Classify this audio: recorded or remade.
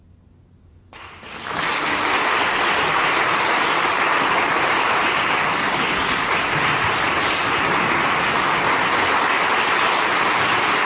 recorded